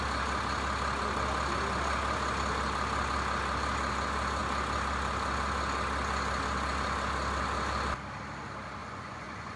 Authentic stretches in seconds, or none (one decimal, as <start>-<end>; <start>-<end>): 0.0-8.8